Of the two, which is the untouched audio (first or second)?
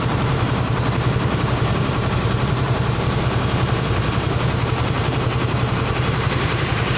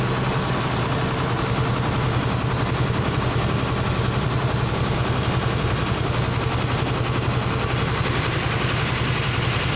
second